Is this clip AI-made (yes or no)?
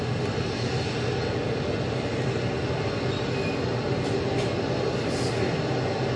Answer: no